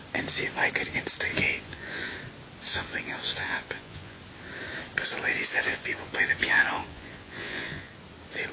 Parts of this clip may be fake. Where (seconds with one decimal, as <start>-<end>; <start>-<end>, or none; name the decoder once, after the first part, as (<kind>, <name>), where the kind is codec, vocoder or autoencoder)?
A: 1.3-2.1 (vocoder, Vocos); 2.7-4.2; 5.3-7.9